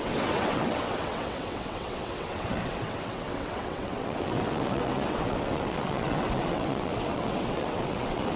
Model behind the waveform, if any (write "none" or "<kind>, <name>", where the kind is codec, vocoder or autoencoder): vocoder, WaveNeXt